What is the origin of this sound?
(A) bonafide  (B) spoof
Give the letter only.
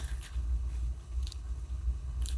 B